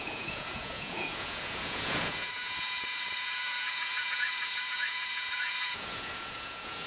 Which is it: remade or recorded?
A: remade